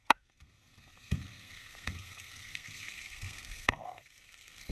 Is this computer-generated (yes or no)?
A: yes